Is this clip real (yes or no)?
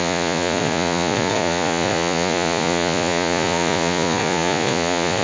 no